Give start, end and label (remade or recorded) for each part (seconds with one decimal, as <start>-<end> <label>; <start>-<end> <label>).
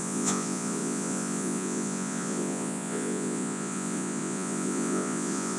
0.0-5.6 remade